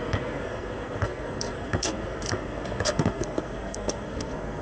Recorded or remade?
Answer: remade